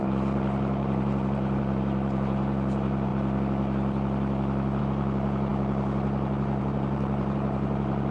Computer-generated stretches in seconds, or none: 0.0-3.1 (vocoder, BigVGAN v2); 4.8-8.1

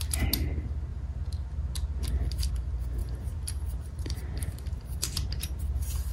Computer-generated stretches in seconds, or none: 3.0-6.1 (vocoder, BigVGAN v2)

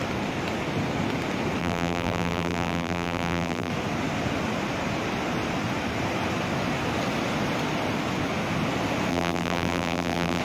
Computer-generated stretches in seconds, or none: 1.6-3.7 (vocoder, BigVGAN v2); 9.1-10.4